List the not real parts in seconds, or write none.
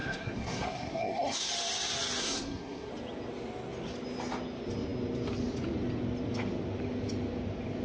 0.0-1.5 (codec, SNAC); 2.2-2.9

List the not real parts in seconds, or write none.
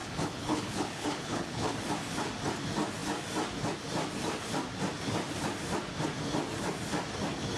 0.0-1.7 (codec, HILCodec)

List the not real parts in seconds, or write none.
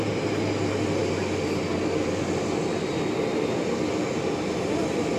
none